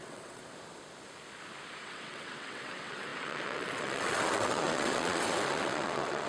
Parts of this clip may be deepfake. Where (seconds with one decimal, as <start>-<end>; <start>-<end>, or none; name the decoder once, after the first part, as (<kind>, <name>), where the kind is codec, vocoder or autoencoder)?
0.0-0.4 (vocoder, WaveNeXt); 1.8-6.3